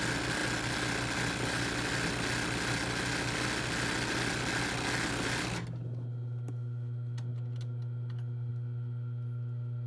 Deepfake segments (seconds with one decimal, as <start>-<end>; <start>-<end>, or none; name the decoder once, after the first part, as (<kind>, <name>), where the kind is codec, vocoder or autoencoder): none